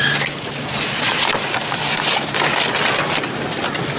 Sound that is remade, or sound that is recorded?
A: recorded